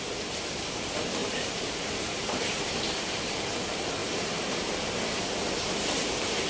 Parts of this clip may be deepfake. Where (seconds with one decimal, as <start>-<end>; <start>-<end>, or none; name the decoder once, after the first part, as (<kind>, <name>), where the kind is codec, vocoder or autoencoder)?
1.2-2.6 (vocoder, BigVGAN v2); 4.0-4.7